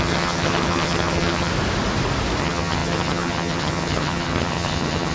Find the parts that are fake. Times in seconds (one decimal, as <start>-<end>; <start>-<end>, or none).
0.0-1.5; 2.4-5.1

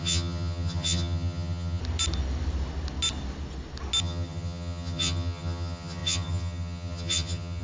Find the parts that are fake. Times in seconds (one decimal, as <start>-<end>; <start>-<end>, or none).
0.0-1.8; 4.0-7.6